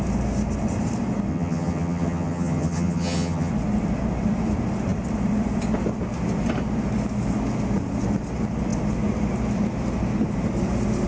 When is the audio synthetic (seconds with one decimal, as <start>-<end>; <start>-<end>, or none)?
1.3-3.5